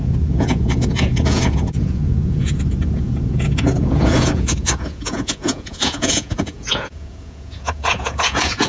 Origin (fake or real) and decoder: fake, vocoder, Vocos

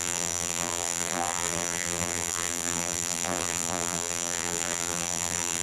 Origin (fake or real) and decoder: fake, vocoder, BigVGAN v2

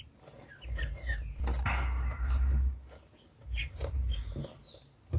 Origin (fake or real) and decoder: real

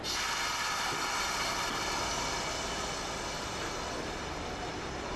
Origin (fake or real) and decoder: real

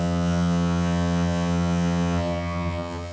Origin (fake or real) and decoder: fake, vocoder, HiFi-GAN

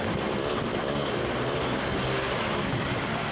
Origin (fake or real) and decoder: real